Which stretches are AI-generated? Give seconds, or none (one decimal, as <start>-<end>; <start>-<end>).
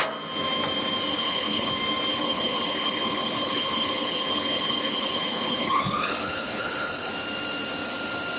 1.1-1.7; 2.1-7.1